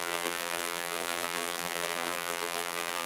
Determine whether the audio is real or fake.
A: fake